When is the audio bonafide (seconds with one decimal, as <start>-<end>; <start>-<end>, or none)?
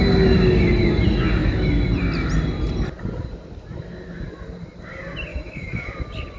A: 0.0-5.3; 5.9-6.4